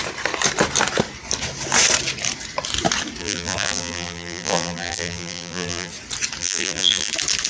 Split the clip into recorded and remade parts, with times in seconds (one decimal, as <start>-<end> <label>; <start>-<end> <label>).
0.0-3.2 recorded; 3.2-5.9 remade; 5.9-6.4 recorded; 6.4-7.1 remade; 7.1-7.5 recorded